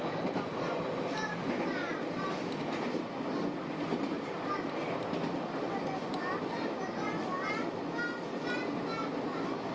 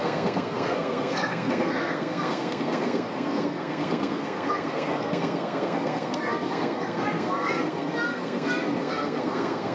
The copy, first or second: second